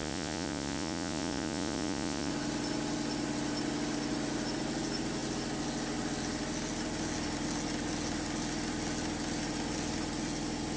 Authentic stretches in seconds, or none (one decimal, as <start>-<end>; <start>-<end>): 2.3-10.8